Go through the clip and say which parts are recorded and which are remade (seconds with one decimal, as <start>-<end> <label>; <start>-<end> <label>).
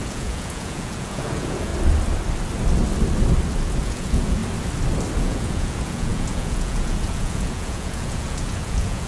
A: 0.0-1.7 remade; 1.7-3.8 recorded; 3.8-4.4 remade; 4.4-5.2 recorded; 5.2-9.1 remade